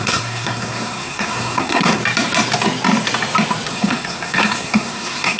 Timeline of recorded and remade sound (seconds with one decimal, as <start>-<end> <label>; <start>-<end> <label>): 0.0-2.0 remade; 2.0-3.7 recorded; 3.7-5.4 remade